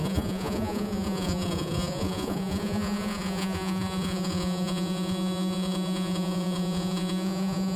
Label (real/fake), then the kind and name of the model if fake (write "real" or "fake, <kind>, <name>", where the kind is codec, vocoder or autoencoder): fake, vocoder, Vocos